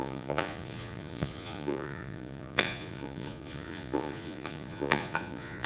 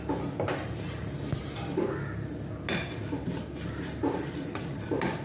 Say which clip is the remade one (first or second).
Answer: first